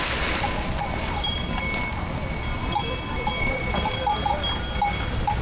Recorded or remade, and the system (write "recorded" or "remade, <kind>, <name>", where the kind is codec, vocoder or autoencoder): recorded